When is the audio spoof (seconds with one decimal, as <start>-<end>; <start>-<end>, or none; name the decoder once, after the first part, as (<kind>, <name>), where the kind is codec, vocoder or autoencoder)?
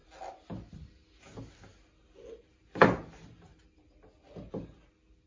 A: none